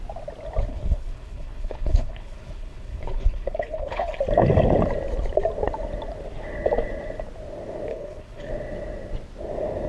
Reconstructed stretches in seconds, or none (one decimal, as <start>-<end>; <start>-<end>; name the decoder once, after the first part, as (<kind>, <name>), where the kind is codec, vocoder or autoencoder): 0.7-4.2 (codec, HILCodec); 7.9-8.5